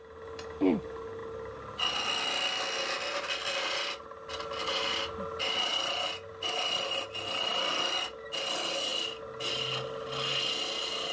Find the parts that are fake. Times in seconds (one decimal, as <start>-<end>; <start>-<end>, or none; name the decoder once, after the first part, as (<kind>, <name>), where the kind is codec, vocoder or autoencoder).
none